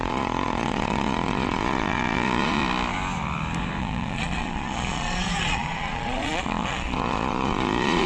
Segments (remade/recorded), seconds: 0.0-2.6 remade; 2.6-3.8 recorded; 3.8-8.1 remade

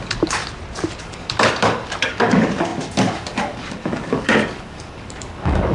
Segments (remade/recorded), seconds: 0.0-0.4 remade; 0.4-1.0 recorded; 1.0-5.7 remade

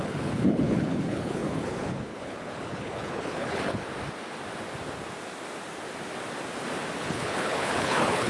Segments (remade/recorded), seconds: 0.0-3.9 remade; 3.9-7.0 recorded; 7.0-8.3 remade

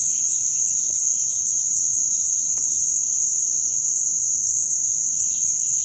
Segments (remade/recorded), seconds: 0.0-5.8 remade

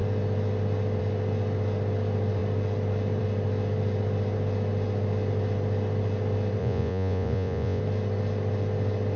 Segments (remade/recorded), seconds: 0.0-6.6 recorded; 6.6-7.8 remade; 7.8-9.2 recorded

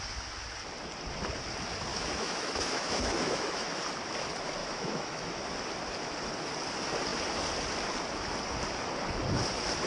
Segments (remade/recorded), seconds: 0.0-1.9 recorded; 1.9-3.8 remade; 3.8-4.6 recorded; 4.6-5.4 remade; 5.4-9.9 recorded

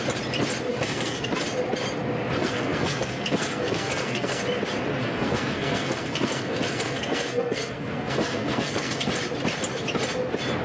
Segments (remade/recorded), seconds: 0.0-0.7 recorded; 0.7-1.3 remade; 1.3-2.4 recorded; 2.4-4.4 remade; 4.4-5.0 recorded; 5.0-9.1 remade; 9.1-10.6 recorded

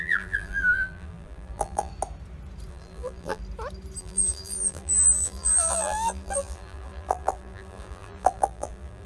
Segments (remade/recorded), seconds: 0.0-1.9 remade; 1.9-2.7 recorded; 2.7-3.4 remade; 3.4-4.0 recorded; 4.0-9.1 remade